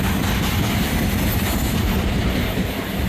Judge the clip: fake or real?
real